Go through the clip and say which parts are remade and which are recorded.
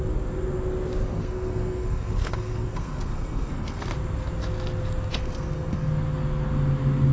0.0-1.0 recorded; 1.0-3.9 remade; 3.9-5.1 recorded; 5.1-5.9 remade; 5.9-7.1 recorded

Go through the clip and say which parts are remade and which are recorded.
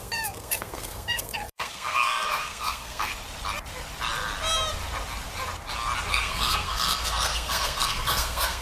0.0-3.1 remade; 3.1-6.1 recorded; 6.1-8.6 remade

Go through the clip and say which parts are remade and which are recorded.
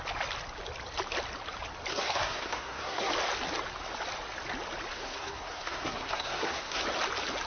0.0-1.9 recorded; 1.9-3.1 remade; 3.1-4.9 recorded; 4.9-6.8 remade; 6.8-7.5 recorded